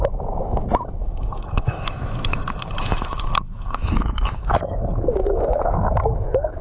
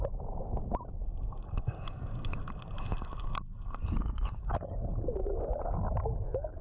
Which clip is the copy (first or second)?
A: first